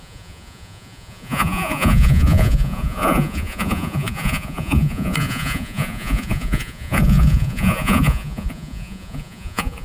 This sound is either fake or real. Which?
fake